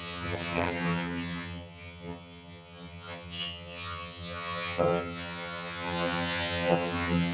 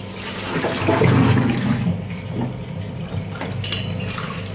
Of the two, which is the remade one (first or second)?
first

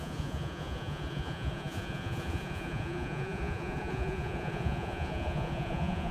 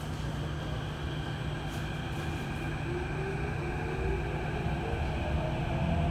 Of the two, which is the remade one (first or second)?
first